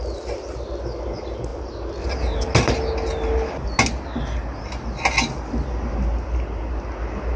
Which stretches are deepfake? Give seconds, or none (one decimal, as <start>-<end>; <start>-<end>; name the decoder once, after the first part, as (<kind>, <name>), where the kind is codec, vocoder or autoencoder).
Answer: none